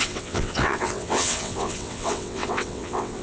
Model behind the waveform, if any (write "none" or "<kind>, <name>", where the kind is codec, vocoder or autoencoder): vocoder, WaveNeXt